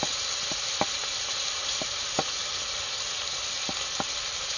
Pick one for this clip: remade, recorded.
recorded